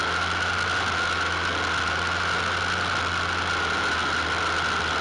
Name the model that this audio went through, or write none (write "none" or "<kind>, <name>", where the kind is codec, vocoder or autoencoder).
none